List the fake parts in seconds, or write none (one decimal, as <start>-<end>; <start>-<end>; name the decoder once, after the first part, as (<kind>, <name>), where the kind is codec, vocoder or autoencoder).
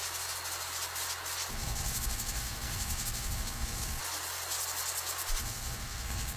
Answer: 1.5-4.0 (codec, SNAC); 5.4-6.4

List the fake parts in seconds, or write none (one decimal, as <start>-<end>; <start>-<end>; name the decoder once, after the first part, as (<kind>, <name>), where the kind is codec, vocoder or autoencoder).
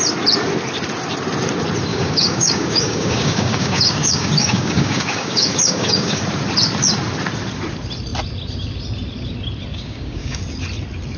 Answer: 1.9-6.2 (codec, DAC); 9.7-10.4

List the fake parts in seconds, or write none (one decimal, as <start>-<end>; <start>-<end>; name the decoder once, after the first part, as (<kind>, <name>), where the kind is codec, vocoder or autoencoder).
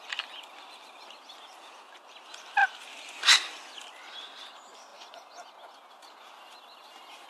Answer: none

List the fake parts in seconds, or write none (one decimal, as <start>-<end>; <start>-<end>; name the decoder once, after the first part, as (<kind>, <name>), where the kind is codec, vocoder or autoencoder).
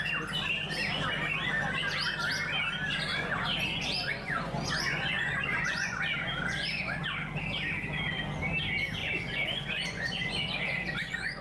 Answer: 3.1-7.0 (vocoder, Vocos); 9.0-11.4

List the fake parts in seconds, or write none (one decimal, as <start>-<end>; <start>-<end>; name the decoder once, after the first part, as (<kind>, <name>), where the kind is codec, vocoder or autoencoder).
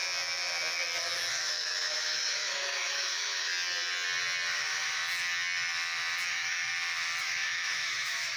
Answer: 1.3-3.5 (autoencoder, DAC-VAE); 4.5-5.0; 6.3-6.7; 7.2-8.4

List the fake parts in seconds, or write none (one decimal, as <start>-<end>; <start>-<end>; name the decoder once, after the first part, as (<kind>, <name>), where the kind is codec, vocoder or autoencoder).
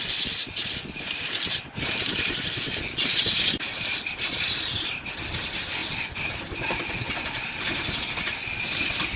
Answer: none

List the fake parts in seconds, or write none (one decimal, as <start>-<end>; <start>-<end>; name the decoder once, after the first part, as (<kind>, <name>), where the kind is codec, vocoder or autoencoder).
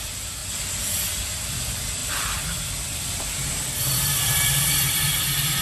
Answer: 0.0-0.4 (vocoder, BigVGAN v2); 1.4-5.6